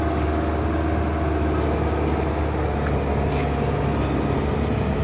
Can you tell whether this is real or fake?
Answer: real